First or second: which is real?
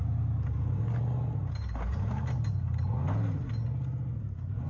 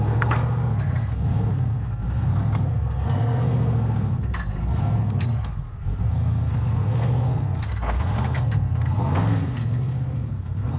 first